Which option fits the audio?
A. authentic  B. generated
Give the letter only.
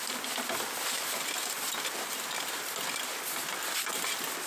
A